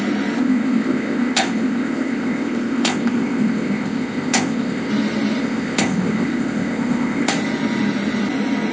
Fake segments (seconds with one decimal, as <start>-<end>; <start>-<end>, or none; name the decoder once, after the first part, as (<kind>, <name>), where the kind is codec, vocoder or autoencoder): 0.4-4.9 (codec, ZipCodec); 5.4-7.3